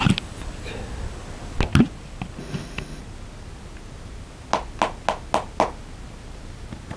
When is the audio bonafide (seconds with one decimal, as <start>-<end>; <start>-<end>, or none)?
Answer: 0.0-2.4; 3.0-7.0

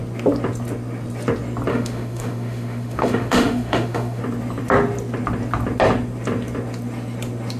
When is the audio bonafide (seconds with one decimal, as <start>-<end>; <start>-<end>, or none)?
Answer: 0.0-1.7; 4.2-7.6

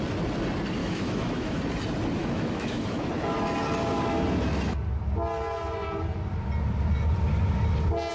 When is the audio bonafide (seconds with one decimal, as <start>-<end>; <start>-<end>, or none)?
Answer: 0.0-0.8; 1.6-2.2; 3.1-8.1

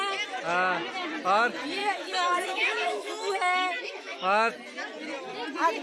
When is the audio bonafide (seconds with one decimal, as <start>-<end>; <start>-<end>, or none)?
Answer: 0.0-1.8; 4.5-5.8

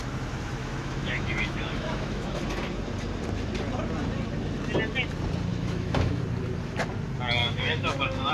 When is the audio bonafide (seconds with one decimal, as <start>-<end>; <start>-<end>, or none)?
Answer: 0.0-0.6; 2.4-5.5; 6.2-7.4

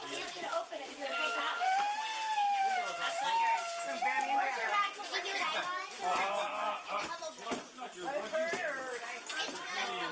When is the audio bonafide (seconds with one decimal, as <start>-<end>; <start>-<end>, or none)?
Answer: 0.0-6.6; 7.2-10.1